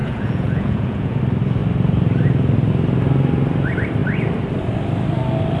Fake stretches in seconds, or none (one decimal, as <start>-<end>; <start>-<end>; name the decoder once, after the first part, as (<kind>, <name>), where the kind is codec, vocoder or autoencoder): 0.0-1.2 (vocoder, Vocos)